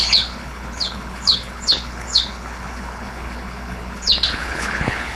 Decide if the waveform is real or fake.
fake